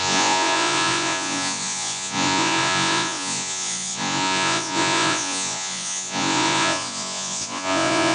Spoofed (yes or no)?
yes